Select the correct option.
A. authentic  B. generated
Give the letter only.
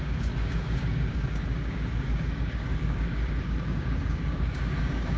B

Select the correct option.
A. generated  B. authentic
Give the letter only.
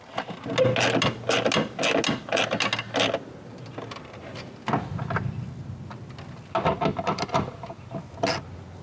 B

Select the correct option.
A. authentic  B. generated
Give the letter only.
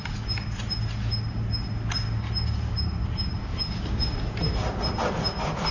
A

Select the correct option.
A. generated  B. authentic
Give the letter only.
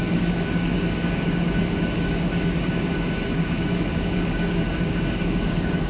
A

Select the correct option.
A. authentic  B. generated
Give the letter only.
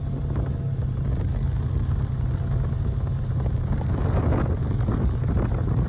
A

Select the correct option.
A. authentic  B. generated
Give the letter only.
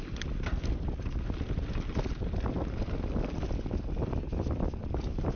A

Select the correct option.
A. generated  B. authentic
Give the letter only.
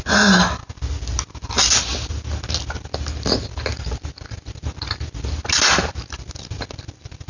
B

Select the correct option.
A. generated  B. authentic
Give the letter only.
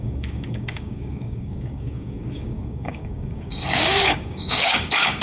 A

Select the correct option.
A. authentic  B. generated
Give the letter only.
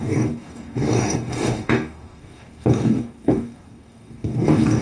B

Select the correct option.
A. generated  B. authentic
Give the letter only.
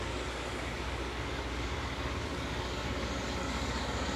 A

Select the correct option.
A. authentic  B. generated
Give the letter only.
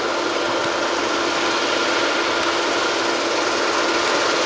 A